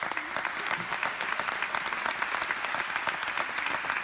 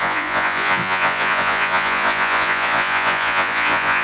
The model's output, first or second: second